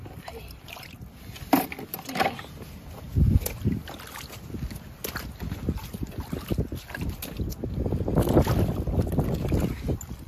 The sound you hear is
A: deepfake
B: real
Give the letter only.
B